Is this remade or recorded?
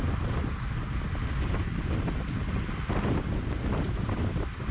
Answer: recorded